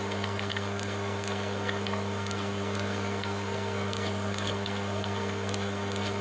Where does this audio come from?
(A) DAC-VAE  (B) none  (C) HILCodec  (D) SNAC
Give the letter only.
D